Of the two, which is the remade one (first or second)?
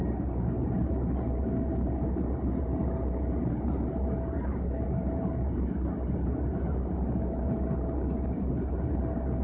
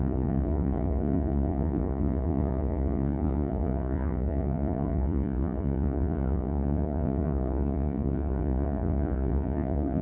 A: second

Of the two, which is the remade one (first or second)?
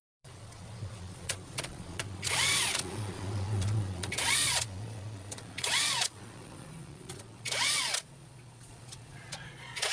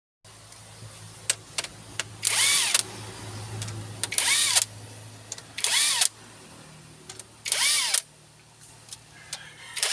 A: first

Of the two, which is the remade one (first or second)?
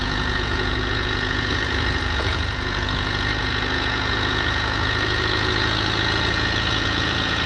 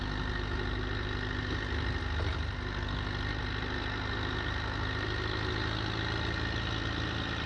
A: first